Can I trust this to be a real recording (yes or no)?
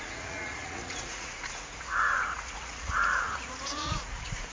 no